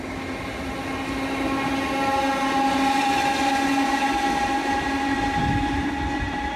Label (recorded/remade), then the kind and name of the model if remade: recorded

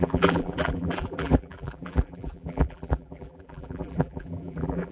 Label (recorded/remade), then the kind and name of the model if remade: remade, vocoder, BigVGAN v2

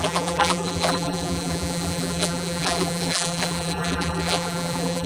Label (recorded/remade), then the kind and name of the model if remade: remade, vocoder, BigVGAN v2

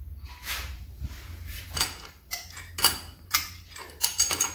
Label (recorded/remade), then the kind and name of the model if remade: remade, vocoder, BigVGAN v2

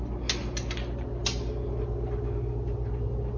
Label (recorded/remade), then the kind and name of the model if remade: recorded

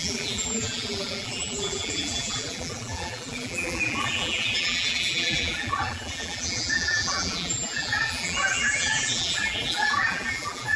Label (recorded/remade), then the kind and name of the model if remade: remade, vocoder, BigVGAN v2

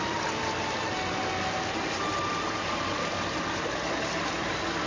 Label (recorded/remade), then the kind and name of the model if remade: recorded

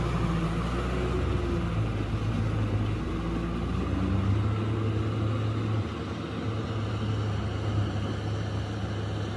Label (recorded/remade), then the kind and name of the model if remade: recorded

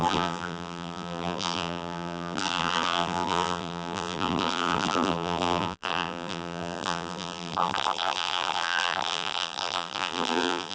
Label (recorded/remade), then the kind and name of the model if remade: remade, vocoder, BigVGAN v2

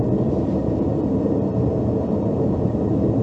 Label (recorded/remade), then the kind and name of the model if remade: remade, vocoder, BigVGAN v2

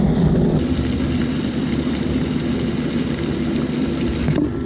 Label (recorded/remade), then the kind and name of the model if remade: recorded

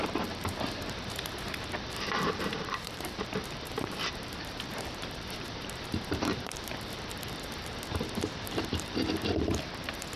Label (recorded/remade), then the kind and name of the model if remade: remade, vocoder, BigVGAN v2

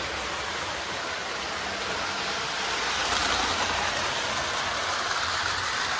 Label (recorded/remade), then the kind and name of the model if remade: recorded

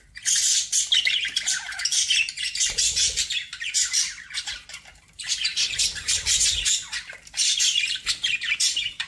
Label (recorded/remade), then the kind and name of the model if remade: remade, vocoder, BigVGAN v2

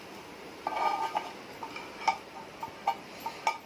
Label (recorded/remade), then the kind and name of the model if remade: recorded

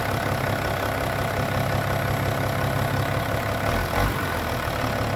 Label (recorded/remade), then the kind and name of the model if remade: recorded